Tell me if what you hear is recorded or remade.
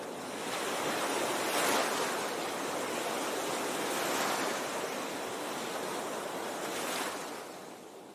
recorded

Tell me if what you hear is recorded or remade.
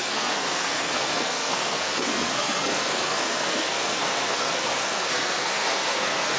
remade